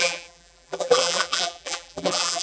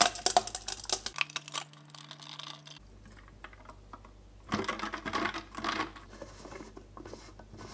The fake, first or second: first